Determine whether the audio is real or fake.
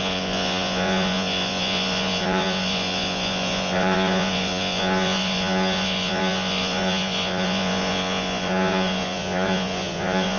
fake